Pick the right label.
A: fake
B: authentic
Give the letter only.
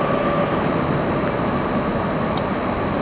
B